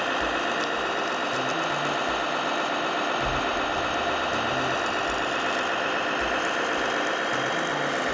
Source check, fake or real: real